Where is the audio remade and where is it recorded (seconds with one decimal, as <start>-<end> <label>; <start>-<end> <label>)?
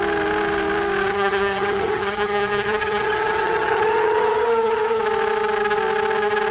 0.0-1.1 recorded; 1.1-5.0 remade; 5.0-6.5 recorded